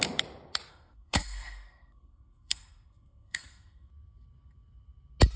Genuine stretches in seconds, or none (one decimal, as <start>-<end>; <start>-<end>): 0.0-0.7; 3.9-5.4